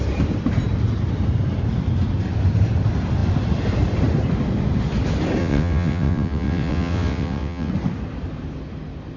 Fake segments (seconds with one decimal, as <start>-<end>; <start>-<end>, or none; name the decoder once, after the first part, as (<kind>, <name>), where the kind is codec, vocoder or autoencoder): 5.4-7.7 (vocoder, WaveNeXt)